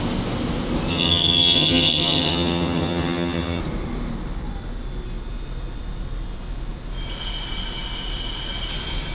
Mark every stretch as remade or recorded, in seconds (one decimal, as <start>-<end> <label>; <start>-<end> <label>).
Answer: 0.0-0.9 recorded; 0.9-3.6 remade; 3.6-9.1 recorded